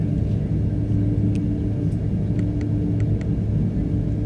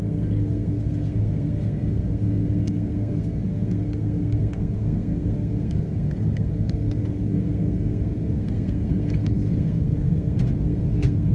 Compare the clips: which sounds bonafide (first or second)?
first